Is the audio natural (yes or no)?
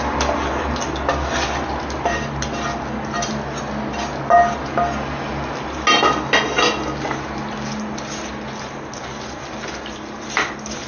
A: yes